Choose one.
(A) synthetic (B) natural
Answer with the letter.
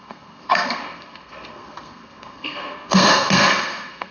A